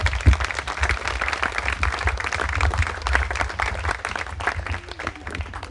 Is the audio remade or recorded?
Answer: recorded